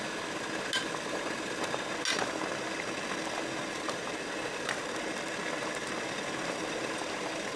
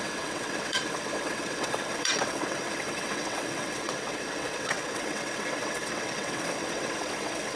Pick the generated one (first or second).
second